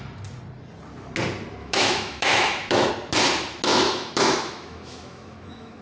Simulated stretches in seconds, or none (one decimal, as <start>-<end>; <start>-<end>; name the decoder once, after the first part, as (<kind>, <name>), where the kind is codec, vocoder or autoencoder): 1.6-2.9 (autoencoder, DAC-VAE); 3.7-5.8